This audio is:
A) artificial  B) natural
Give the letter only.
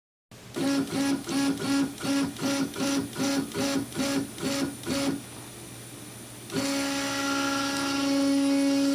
B